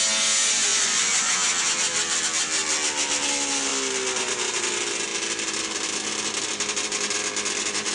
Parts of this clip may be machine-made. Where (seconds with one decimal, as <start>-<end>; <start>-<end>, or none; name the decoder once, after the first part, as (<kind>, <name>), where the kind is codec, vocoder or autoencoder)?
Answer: 0.7-1.3 (vocoder, Vocos)